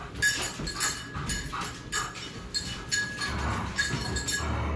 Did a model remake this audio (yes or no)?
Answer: no